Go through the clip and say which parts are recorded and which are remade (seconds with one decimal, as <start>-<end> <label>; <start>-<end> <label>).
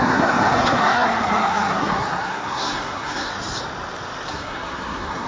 0.0-3.3 remade; 3.3-4.3 recorded; 4.3-5.3 remade